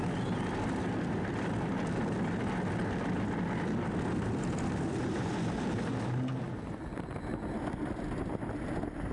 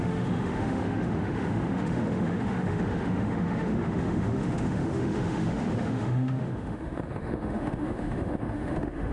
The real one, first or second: first